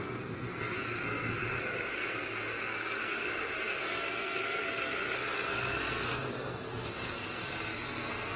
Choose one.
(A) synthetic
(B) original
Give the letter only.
A